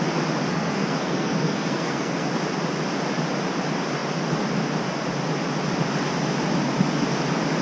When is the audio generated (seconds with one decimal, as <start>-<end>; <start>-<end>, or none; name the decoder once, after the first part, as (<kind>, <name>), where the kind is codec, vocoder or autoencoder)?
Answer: 0.5-2.3 (codec, SNAC)